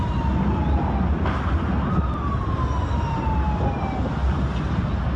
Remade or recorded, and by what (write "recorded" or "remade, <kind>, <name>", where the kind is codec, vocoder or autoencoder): recorded